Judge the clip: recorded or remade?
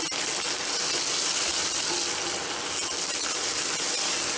recorded